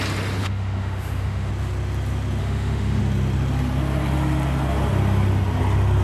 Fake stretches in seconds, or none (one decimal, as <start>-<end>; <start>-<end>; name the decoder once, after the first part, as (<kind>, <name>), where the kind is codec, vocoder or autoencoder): 0.4-1.5 (autoencoder, DAC-VAE); 2.4-3.0

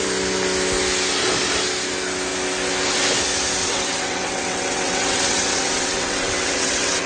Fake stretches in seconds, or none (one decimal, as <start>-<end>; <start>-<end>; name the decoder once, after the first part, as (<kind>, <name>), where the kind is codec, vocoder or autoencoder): 3.6-7.1 (vocoder, WaveNeXt)